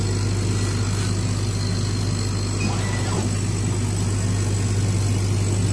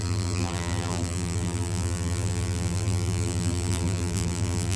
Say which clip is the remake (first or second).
second